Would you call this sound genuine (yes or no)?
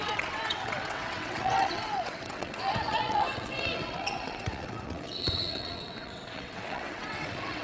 no